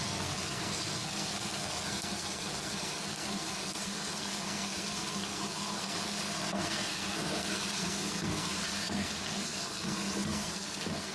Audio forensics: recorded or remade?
remade